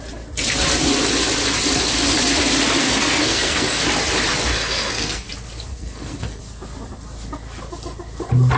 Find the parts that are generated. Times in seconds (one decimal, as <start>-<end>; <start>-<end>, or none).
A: 2.8-3.8; 4.5-5.3; 5.7-6.4